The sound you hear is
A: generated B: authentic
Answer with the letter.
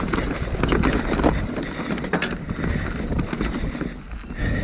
B